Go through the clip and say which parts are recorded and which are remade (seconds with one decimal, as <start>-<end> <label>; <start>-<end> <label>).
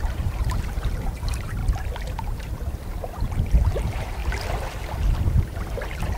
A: 0.0-1.6 remade; 1.6-2.2 recorded; 2.2-2.6 remade; 2.6-3.2 recorded; 3.2-4.2 remade; 4.2-5.2 recorded; 5.2-6.2 remade